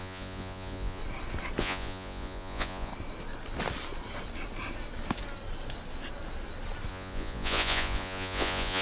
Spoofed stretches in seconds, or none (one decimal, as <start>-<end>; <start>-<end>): 0.0-1.0; 1.6-2.9; 6.9-8.8